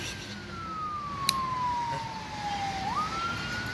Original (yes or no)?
yes